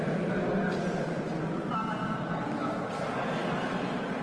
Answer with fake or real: real